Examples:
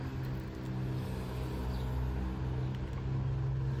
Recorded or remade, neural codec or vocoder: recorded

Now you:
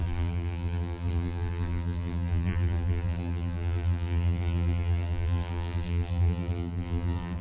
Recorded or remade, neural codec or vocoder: remade, vocoder, BigVGAN v2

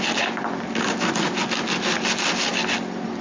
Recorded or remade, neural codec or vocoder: recorded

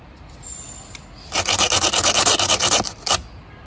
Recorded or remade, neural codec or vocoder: recorded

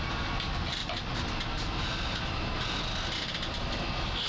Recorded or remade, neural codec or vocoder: recorded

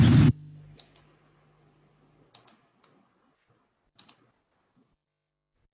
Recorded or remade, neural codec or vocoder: recorded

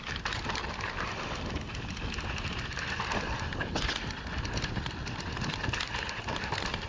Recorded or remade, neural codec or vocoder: recorded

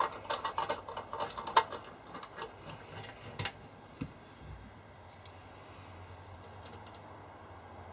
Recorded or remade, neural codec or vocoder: recorded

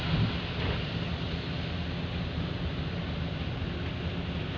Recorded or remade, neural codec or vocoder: recorded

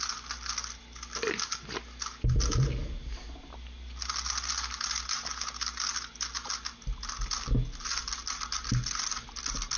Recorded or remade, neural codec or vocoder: recorded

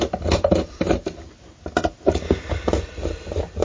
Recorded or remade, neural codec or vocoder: recorded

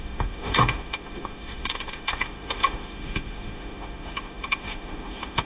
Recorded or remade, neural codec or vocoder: remade, autoencoder, DAC-VAE